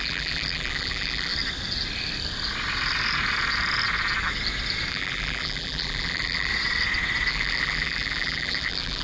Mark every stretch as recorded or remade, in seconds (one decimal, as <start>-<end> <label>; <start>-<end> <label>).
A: 0.0-1.3 remade; 1.3-4.9 recorded; 4.9-6.5 remade; 6.5-7.3 recorded; 7.3-9.0 remade

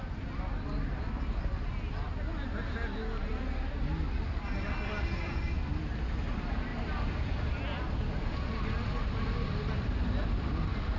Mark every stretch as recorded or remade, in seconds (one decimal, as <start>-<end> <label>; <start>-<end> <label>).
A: 0.0-6.7 recorded; 6.7-7.4 remade; 7.4-11.0 recorded

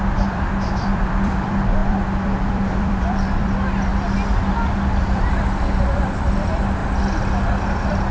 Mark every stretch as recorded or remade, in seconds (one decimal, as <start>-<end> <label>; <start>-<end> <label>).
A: 0.0-3.9 remade; 3.9-4.5 recorded; 4.5-6.8 remade; 6.8-7.5 recorded; 7.5-8.1 remade

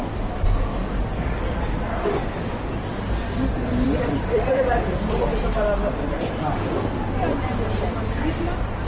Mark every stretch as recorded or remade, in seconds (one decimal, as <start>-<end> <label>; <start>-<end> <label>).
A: 0.0-5.5 remade; 5.5-6.1 recorded; 6.1-8.9 remade